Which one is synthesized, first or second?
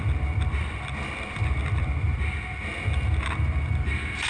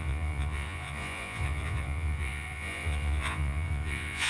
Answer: second